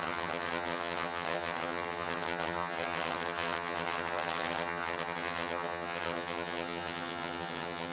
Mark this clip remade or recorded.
remade